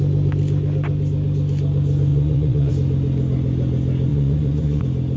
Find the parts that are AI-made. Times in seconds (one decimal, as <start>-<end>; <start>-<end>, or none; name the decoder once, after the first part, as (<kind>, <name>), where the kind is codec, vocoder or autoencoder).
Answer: 2.1-2.7 (vocoder, Vocos); 4.1-4.8